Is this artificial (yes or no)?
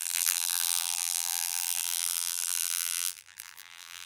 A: yes